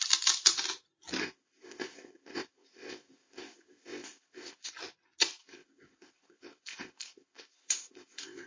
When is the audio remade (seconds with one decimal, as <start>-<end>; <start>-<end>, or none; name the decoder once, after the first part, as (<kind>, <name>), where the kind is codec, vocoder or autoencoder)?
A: 1.2-4.7 (codec, ZipCodec); 5.4-8.5